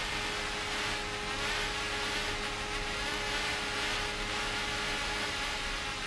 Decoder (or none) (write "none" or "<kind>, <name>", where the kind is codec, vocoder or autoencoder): none